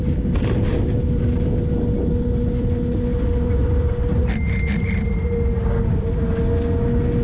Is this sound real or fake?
real